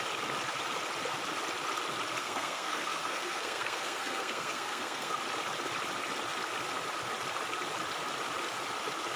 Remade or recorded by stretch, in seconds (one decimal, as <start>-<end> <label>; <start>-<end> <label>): 0.0-2.2 recorded; 2.2-5.2 remade; 5.2-9.2 recorded